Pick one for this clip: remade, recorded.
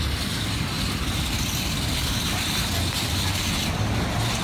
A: recorded